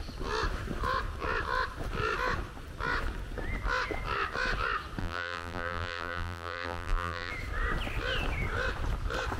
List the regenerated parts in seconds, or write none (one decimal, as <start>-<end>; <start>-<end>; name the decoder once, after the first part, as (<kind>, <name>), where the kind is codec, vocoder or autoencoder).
5.0-7.3 (vocoder, BigVGAN v2)